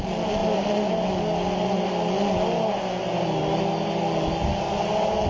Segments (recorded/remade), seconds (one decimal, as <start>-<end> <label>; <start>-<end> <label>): 0.0-5.3 recorded